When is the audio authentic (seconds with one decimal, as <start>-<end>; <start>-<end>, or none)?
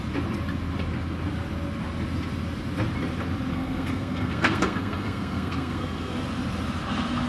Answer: 0.0-3.5; 6.1-7.3